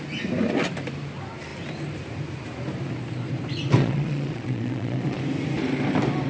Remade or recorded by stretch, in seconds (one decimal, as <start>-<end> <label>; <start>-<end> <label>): 0.0-3.8 recorded; 3.8-5.2 remade; 5.2-6.3 recorded